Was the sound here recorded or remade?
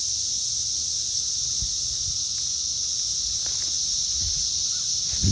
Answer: recorded